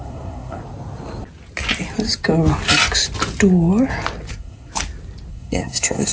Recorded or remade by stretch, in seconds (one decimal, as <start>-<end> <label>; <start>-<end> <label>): 0.0-0.6 remade; 0.6-4.3 recorded; 4.3-4.7 remade; 4.7-5.3 recorded; 5.3-6.1 remade